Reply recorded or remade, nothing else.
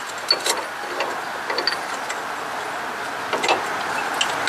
recorded